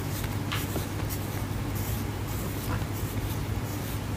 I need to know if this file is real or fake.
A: real